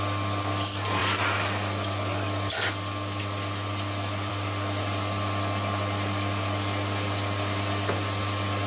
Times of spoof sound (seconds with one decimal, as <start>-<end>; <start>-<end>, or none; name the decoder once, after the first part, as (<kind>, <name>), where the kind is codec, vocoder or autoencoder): none